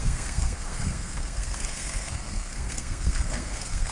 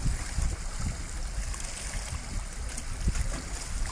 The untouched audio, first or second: second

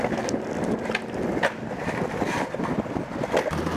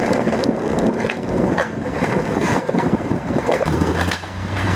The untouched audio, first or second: first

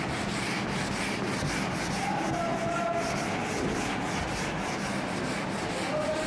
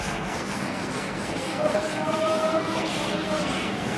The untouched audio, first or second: first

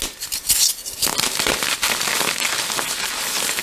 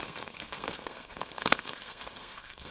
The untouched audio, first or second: first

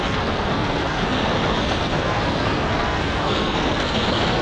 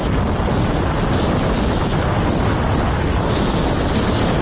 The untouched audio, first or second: second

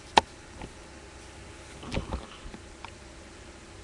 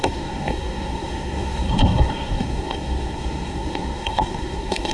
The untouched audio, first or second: first